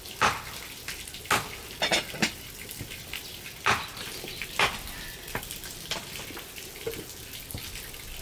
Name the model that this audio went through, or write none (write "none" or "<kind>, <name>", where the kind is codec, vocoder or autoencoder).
none